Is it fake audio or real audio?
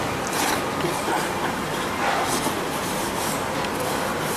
real